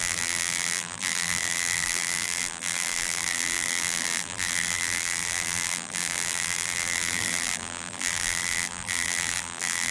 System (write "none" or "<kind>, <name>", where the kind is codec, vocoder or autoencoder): vocoder, BigVGAN v2